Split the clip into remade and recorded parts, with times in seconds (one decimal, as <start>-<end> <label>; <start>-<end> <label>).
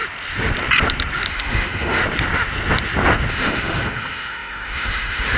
0.0-1.3 recorded; 1.3-2.0 remade; 2.0-3.3 recorded; 3.3-5.4 remade